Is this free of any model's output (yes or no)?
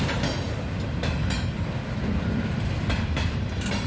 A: yes